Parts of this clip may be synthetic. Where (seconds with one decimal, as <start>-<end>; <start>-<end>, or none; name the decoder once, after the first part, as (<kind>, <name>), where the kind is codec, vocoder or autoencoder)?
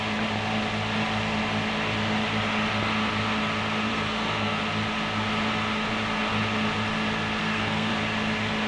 3.9-4.6 (codec, SNAC); 7.4-7.9